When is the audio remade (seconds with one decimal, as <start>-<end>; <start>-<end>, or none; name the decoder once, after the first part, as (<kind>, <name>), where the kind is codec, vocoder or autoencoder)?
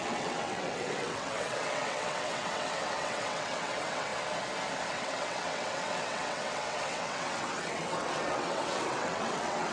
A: 0.0-4.1 (vocoder, WaveNeXt); 4.9-9.7